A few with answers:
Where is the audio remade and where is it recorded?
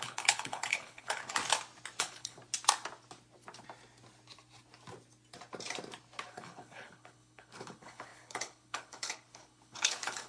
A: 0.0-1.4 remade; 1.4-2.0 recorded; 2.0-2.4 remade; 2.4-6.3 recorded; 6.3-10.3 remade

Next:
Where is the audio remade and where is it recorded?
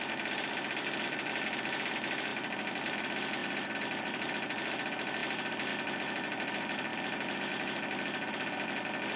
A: 0.0-3.4 recorded; 3.4-4.3 remade; 4.3-9.2 recorded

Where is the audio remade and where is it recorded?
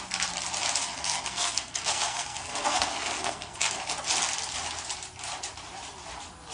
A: 0.0-0.8 recorded; 0.8-3.8 remade; 3.8-6.5 recorded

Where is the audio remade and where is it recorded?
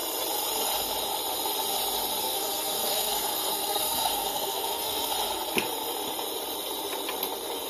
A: 0.0-2.2 recorded; 2.2-5.1 remade; 5.1-7.7 recorded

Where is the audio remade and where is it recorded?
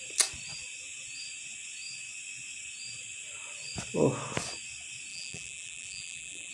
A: 0.0-5.1 recorded; 5.1-6.5 remade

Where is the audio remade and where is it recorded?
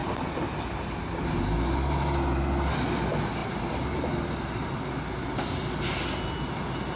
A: 0.0-7.0 recorded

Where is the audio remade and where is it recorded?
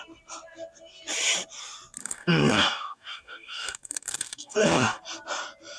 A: 0.0-2.0 recorded; 2.0-5.0 remade; 5.0-5.8 recorded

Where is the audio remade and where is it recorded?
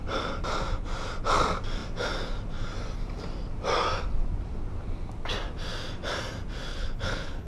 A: 0.0-6.7 recorded; 6.7-7.5 remade